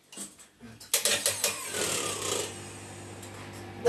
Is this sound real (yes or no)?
yes